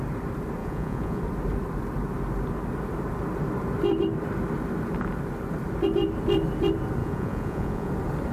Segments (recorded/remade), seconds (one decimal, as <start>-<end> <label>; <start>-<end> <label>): 0.0-0.6 recorded; 0.6-1.2 remade; 1.2-7.0 recorded; 7.0-7.9 remade; 7.9-8.3 recorded